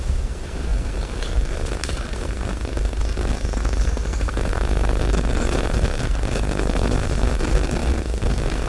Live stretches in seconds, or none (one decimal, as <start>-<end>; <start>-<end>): none